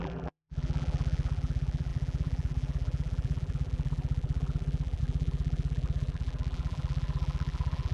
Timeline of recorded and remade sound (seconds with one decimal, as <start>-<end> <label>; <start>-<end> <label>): 0.0-7.9 remade